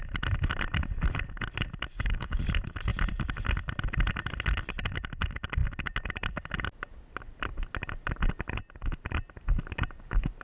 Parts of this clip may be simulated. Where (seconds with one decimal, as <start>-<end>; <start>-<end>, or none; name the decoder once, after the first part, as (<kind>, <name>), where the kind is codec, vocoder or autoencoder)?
1.9-2.4 (codec, DAC)